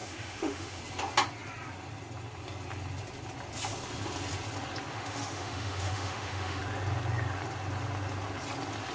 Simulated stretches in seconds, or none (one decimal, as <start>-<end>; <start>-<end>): 0.0-0.8; 4.9-6.6